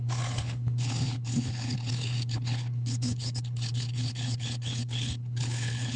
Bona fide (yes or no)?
no